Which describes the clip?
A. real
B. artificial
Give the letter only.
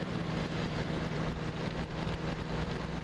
B